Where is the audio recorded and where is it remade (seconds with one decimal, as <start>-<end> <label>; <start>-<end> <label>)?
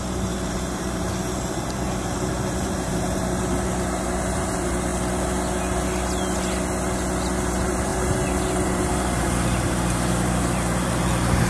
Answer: 0.0-4.9 remade; 4.9-7.4 recorded; 7.4-11.5 remade